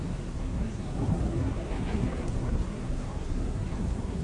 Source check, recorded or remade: remade